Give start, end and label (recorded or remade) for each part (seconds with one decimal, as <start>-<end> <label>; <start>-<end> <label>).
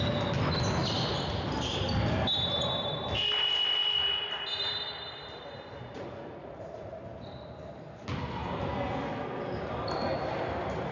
0.0-5.8 recorded; 5.8-7.0 remade; 7.0-10.9 recorded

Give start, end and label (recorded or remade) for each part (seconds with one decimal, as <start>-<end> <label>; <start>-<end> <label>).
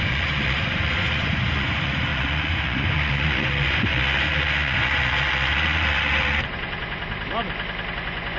0.0-7.0 remade; 7.0-7.9 recorded; 7.9-8.4 remade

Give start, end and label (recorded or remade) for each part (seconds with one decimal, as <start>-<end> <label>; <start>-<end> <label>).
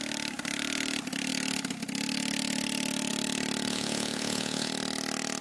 0.0-3.7 recorded; 3.7-4.7 remade; 4.7-5.4 recorded